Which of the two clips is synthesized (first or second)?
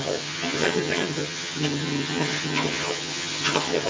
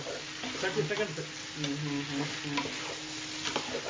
first